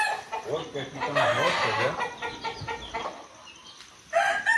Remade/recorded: recorded